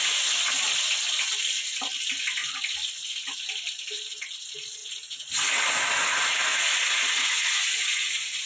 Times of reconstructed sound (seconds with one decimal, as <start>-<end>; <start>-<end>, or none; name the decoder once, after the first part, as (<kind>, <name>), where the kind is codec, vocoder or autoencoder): 4.8-5.3 (vocoder, Vocos); 6.5-8.4

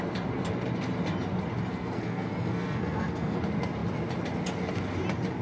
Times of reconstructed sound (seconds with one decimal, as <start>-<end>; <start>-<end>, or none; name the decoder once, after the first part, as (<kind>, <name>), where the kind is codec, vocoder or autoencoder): 1.7-3.4 (codec, SNAC)

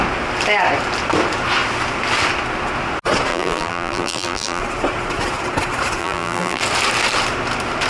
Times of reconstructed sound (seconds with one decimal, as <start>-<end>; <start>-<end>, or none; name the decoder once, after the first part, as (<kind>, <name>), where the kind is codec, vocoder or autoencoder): 3.3-4.6 (vocoder, BigVGAN v2); 6.0-6.6